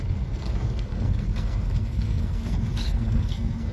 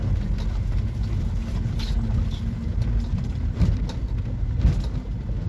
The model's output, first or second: first